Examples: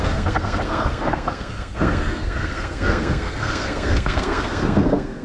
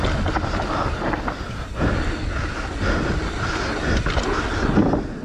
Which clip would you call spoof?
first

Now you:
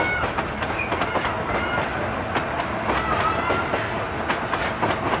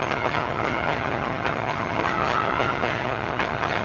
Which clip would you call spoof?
second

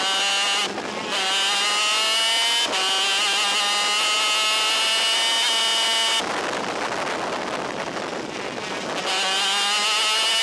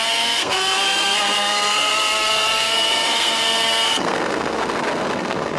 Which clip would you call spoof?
second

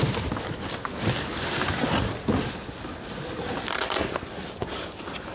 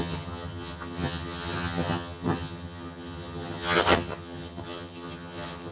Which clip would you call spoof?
second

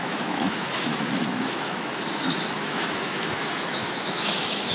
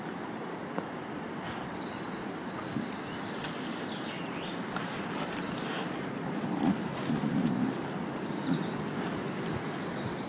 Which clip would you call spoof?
first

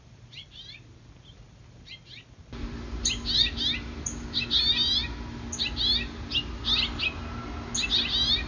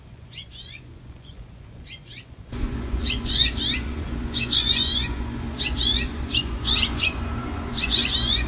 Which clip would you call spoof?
second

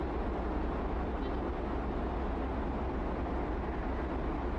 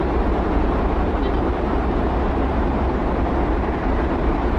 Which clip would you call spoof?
second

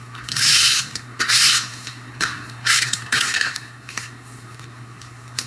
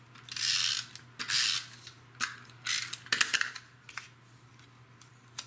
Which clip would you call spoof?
first